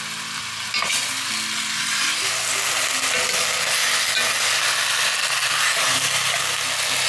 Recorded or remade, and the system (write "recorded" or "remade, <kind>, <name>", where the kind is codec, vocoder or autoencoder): recorded